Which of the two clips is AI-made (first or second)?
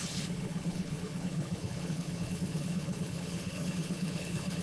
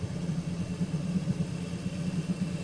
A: first